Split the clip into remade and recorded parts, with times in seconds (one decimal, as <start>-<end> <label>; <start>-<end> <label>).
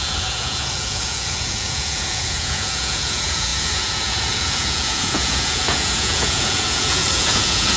0.0-7.8 remade